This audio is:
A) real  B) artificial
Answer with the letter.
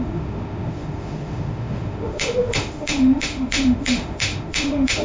B